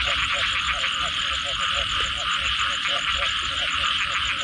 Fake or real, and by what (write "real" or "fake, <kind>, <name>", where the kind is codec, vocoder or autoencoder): real